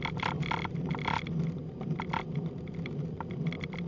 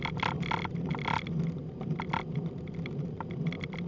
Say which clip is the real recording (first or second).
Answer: first